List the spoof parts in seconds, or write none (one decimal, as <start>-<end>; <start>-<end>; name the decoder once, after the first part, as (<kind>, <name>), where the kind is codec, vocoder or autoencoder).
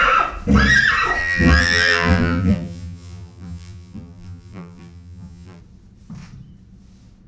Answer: 1.2-5.6 (vocoder, BigVGAN v2)